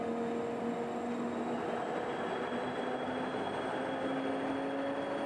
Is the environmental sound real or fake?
real